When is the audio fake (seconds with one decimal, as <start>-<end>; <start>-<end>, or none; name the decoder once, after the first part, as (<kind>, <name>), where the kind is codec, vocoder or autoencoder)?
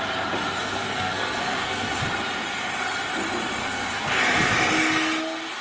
0.6-2.0 (codec, SNAC); 3.6-4.2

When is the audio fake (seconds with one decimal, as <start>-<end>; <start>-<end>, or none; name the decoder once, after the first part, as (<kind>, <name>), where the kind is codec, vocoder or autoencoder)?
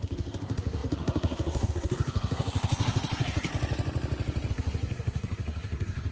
0.0-3.5 (codec, SNAC); 4.5-6.1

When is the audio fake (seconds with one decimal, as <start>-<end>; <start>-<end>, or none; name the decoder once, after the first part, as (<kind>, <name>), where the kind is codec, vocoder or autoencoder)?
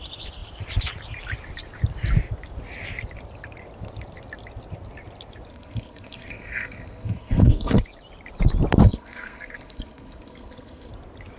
5.5-7.8 (codec, SNAC); 8.8-10.9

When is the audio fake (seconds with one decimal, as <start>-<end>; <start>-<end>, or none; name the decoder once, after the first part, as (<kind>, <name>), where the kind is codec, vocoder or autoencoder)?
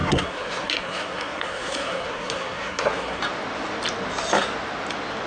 0.0-3.2 (codec, SNAC)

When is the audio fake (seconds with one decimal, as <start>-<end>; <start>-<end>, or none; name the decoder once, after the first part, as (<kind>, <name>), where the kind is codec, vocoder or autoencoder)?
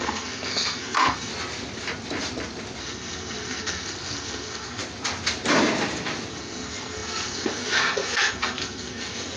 0.0-1.3 (codec, SNAC); 2.8-4.8; 6.3-9.4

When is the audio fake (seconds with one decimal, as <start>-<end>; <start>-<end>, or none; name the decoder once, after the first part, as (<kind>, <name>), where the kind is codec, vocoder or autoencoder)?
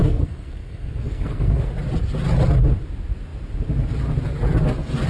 0.0-1.7 (codec, SNAC)